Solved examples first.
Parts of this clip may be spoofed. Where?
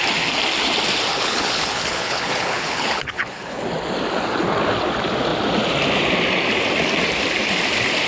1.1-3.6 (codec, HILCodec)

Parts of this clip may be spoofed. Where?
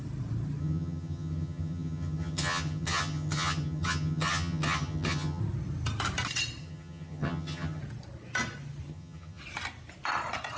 0.6-5.4 (vocoder, HiFi-GAN); 6.6-7.8; 8.9-9.4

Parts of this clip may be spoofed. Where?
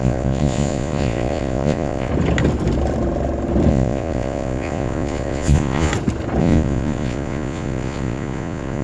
0.0-2.1 (vocoder, Vocos); 3.7-5.9; 6.4-8.8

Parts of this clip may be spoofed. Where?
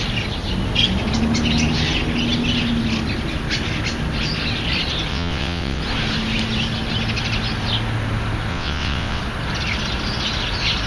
5.1-5.8 (vocoder, WaveNeXt); 8.5-9.2